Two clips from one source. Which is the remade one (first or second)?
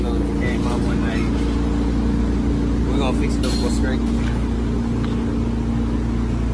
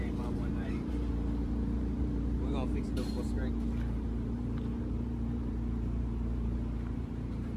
second